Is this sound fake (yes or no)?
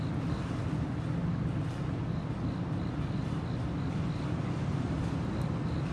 no